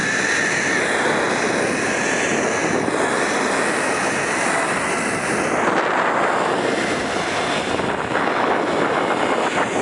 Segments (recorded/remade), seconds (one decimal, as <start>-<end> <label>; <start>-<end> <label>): 0.0-9.8 recorded